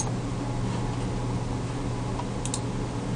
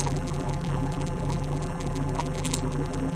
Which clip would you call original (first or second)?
first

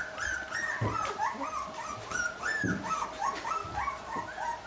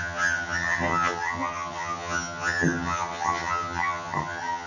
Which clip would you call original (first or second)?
first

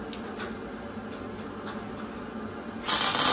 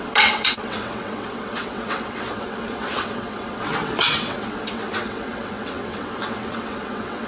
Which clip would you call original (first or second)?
first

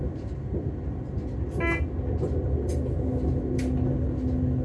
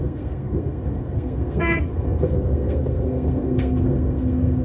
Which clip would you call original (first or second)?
first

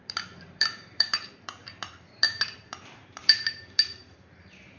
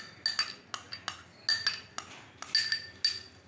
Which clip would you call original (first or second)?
second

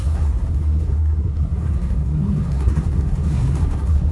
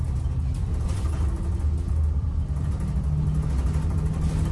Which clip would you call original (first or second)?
second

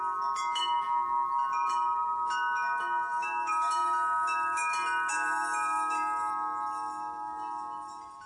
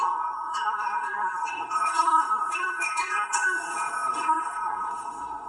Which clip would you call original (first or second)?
first